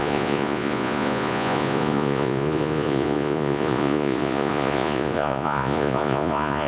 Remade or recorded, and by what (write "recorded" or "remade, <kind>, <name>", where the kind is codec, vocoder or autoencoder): remade, vocoder, Vocos